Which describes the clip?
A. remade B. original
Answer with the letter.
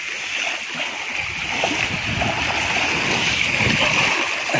B